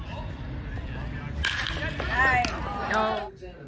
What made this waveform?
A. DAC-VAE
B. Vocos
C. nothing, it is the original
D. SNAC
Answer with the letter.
C